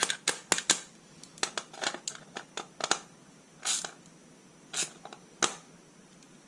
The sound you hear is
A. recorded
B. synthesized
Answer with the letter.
A